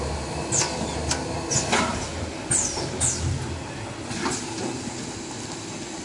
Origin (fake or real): real